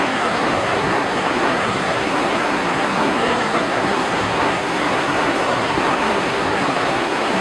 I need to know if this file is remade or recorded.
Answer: remade